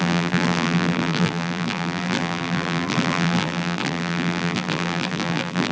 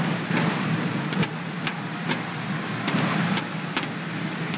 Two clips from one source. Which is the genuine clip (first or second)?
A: second